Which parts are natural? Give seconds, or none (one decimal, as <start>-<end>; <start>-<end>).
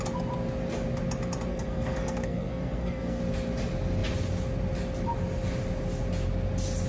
0.0-1.5; 3.2-6.9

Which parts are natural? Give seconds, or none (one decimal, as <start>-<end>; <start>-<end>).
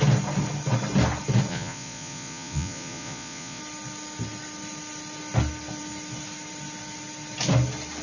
0.0-1.5; 3.6-8.0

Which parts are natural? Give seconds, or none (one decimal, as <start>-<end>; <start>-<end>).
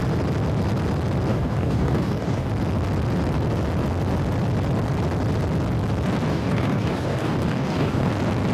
0.0-1.3; 2.5-6.3; 8.1-8.5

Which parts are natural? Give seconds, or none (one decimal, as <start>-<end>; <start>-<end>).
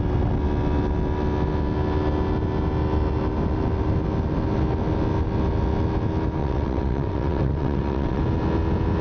0.0-6.4; 8.2-9.0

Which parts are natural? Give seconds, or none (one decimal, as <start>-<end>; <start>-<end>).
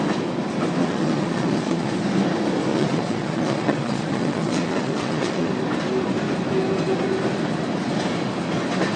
0.0-0.8; 1.9-2.7; 5.5-9.0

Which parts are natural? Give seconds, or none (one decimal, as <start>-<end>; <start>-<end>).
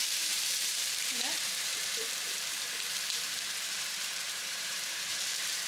none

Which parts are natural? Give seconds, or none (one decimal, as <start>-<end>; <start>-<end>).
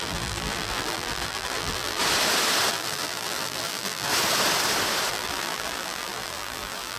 2.0-2.7; 4.1-5.1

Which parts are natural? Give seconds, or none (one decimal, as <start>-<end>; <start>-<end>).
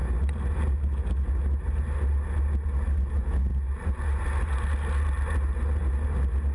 0.0-6.5